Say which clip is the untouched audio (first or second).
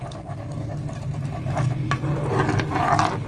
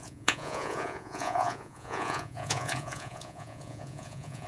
first